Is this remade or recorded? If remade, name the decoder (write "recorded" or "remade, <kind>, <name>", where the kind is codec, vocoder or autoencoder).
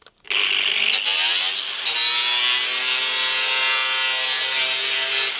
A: recorded